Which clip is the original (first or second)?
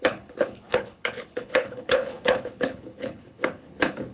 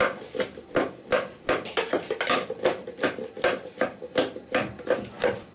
second